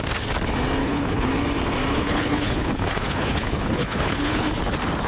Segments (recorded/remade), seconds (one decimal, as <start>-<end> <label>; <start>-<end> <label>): 0.0-0.8 recorded; 0.8-1.3 remade; 1.3-1.9 recorded; 1.9-4.5 remade; 4.5-5.1 recorded